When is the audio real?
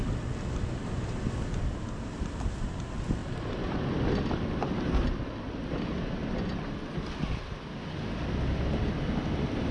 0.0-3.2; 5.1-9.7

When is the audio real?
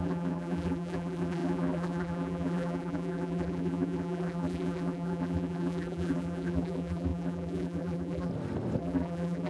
8.3-8.8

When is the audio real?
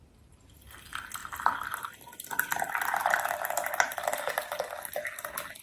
0.0-5.6